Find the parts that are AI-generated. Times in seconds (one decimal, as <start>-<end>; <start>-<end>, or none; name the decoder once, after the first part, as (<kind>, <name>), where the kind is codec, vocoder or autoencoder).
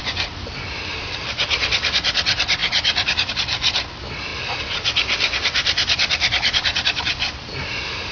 none